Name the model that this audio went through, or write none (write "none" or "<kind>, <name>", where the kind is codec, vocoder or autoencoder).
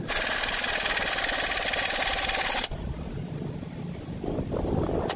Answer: none